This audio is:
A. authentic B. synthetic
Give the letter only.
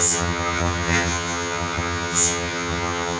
B